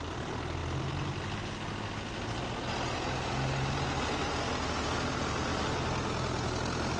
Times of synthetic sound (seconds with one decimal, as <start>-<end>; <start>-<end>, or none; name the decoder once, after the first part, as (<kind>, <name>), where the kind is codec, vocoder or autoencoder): none